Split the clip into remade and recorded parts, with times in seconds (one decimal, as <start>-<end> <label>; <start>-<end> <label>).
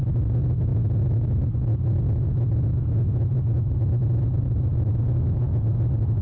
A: 0.0-6.2 recorded